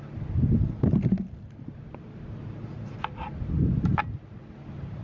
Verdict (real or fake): real